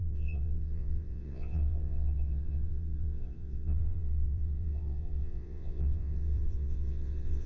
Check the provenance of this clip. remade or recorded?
remade